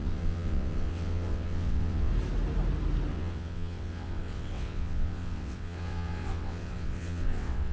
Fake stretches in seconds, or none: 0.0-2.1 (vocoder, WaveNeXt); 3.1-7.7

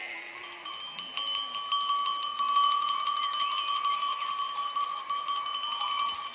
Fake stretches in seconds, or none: none

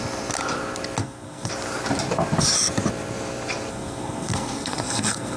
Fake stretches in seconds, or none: 1.0-1.5 (codec, SNAC); 3.7-5.4

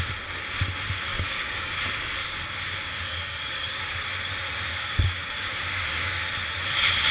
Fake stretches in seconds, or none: 1.1-1.7 (codec, DAC); 2.2-3.9; 4.7-6.2

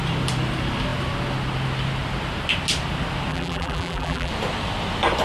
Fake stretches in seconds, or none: 3.3-4.3 (vocoder, BigVGAN v2)